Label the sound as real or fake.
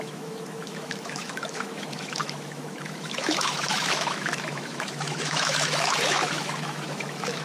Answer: fake